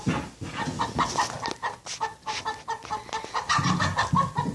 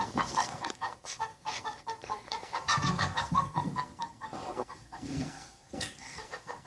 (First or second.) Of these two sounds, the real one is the first